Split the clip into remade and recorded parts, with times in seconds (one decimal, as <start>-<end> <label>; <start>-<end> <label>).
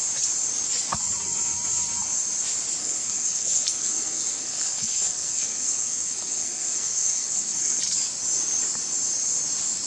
0.0-2.8 recorded; 2.8-7.8 remade; 7.8-9.9 recorded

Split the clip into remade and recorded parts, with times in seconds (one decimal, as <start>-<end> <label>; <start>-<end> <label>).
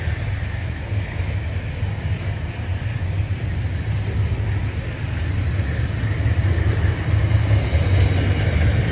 0.0-8.9 recorded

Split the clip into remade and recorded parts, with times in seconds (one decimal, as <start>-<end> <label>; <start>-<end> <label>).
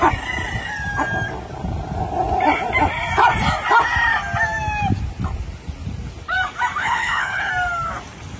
0.0-6.8 recorded; 6.8-7.5 remade; 7.5-8.4 recorded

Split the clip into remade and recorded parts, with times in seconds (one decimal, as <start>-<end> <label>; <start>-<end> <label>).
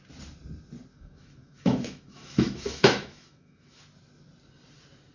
0.0-0.9 recorded; 0.9-3.8 remade; 3.8-5.1 recorded